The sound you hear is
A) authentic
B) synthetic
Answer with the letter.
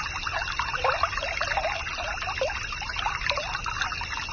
A